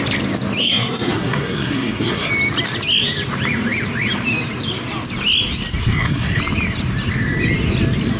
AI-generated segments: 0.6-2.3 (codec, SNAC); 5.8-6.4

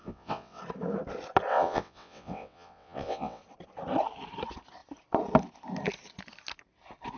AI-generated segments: 0.0-0.6 (vocoder, WaveNeXt); 1.5-3.4

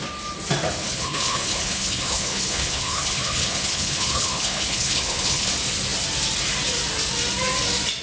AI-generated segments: 0.8-5.5 (codec, HILCodec)